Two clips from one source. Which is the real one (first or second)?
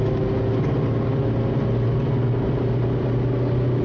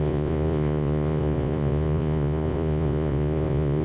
first